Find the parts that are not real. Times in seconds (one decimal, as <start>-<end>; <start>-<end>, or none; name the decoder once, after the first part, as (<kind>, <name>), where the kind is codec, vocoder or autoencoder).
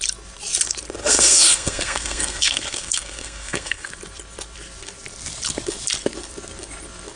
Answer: 1.0-3.9 (codec, SNAC)